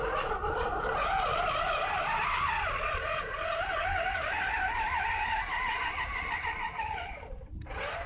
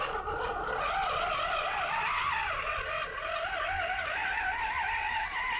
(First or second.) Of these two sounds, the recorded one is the second